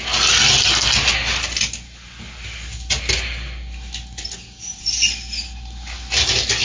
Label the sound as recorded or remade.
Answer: recorded